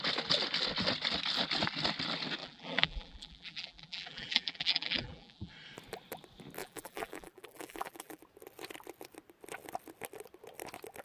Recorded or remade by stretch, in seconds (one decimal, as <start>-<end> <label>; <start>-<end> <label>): 0.0-2.4 recorded; 2.4-5.5 remade; 5.5-6.6 recorded; 6.6-8.2 remade; 8.2-11.0 recorded